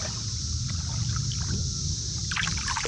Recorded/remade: recorded